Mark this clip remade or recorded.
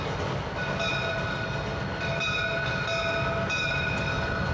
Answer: recorded